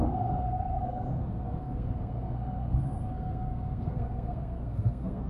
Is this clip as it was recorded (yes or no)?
no